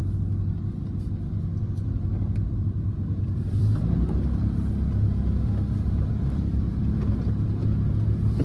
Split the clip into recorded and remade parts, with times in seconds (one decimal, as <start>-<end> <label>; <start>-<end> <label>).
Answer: 0.0-2.4 recorded; 2.4-7.6 remade; 7.6-8.4 recorded